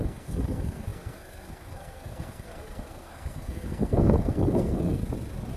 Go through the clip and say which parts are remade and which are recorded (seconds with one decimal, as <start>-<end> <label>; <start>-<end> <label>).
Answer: 0.0-5.0 remade; 5.0-5.6 recorded